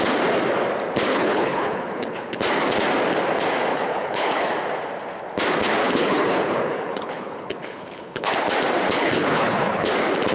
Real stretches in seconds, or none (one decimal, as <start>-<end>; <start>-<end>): 0.0-1.1; 2.4-3.7; 4.5-5.8; 8.3-9.0; 9.9-10.3